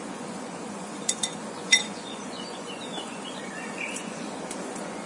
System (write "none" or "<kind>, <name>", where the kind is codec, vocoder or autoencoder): vocoder, Vocos